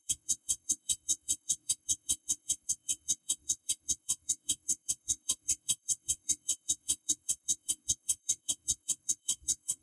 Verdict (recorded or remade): remade